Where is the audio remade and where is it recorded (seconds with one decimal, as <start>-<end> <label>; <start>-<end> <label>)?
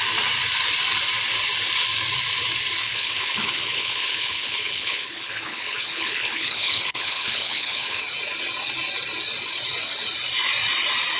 0.0-2.8 recorded; 2.8-8.0 remade; 8.0-11.2 recorded